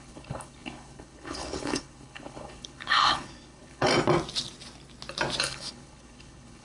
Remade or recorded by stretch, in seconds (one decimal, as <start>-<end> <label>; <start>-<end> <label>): 0.0-3.9 remade; 3.9-5.4 recorded; 5.4-6.6 remade